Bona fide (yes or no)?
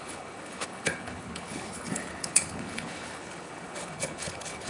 no